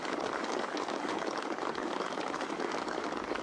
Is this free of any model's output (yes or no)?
no